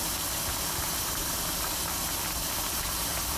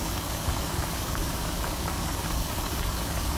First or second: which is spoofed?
second